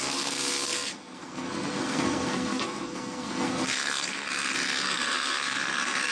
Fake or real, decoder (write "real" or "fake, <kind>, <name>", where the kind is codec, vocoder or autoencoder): fake, codec, SNAC